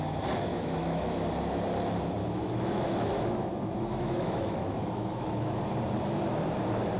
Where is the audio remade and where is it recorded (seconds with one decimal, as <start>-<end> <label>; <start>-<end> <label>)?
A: 0.0-0.5 recorded; 0.5-1.3 remade; 1.3-2.2 recorded; 2.2-5.6 remade; 5.6-7.0 recorded